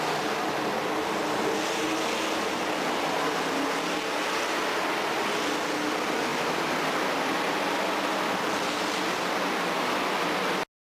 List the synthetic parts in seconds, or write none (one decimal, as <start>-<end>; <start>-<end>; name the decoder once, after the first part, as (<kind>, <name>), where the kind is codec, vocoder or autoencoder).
none